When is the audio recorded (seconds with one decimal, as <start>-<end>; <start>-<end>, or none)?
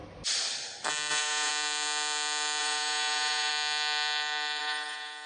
0.0-1.1; 1.5-2.6; 3.5-4.6